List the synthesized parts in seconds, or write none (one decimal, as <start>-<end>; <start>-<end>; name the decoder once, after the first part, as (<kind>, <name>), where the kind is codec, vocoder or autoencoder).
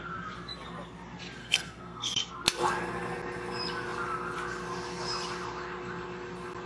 1.4-2.3 (codec, SNAC)